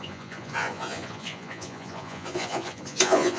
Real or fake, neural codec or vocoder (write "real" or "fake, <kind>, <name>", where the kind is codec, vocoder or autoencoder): fake, vocoder, Vocos